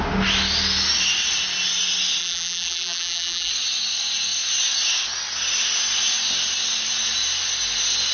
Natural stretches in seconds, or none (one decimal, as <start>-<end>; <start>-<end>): 0.0-2.2; 3.5-8.1